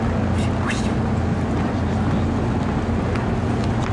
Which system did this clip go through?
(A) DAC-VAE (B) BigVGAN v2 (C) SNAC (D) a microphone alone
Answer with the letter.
D